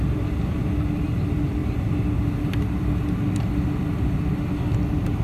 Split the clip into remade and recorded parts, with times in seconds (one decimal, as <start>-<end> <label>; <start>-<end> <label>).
0.0-5.2 recorded